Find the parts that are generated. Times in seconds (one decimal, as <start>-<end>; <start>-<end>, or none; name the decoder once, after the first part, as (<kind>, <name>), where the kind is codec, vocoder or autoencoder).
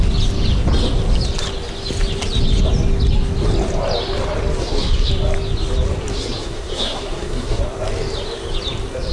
4.6-5.1 (codec, SNAC); 6.1-7.6